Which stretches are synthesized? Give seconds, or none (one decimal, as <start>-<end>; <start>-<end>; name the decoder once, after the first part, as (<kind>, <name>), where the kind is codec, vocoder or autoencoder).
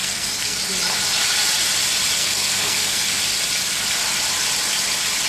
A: 0.0-0.6 (codec, SNAC); 2.2-3.2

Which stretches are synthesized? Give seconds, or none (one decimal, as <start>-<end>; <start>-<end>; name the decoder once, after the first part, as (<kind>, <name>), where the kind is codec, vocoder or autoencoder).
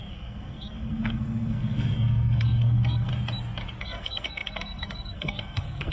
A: 0.0-3.1 (codec, SNAC); 3.8-5.9